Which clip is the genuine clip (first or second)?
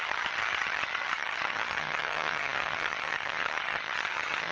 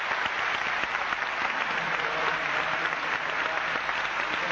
second